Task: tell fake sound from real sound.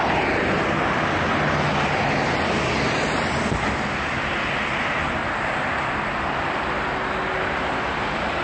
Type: real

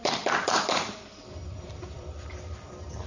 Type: fake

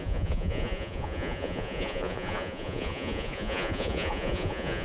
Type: fake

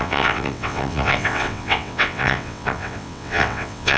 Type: fake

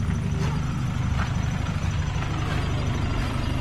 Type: real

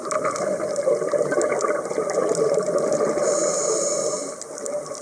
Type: real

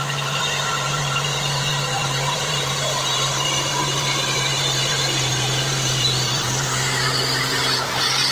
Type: fake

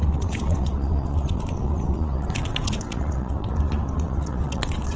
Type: fake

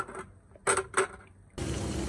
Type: real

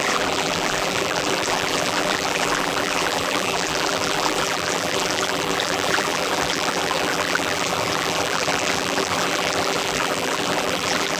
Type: fake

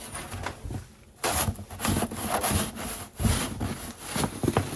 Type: real